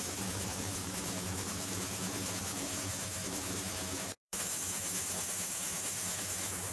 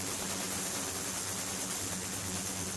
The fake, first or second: first